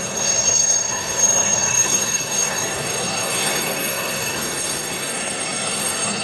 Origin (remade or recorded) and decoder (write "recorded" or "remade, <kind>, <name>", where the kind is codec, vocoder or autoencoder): remade, codec, SNAC